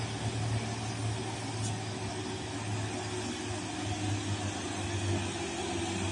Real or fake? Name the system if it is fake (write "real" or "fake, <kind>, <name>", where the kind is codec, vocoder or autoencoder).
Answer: real